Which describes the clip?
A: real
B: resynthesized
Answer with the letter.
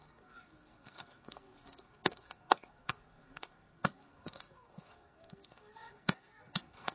B